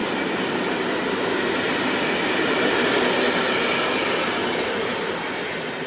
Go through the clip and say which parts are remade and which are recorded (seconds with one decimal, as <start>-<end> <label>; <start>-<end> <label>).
0.0-5.9 recorded